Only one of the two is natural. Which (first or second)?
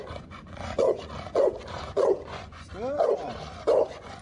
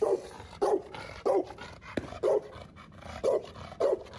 second